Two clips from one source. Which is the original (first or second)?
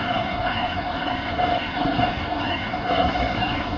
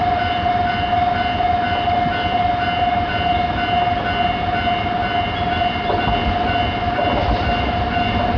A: second